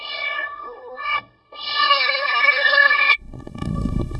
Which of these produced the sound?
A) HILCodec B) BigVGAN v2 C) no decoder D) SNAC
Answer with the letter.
D